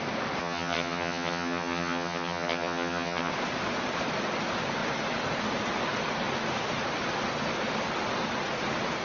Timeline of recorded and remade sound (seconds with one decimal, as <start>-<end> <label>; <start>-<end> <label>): 0.0-0.4 recorded; 0.4-3.3 remade; 3.3-9.0 recorded